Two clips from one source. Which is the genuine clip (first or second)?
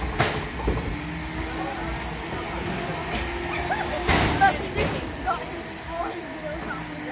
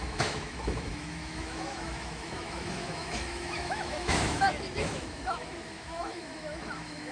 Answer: first